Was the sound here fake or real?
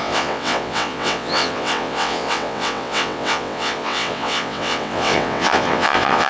fake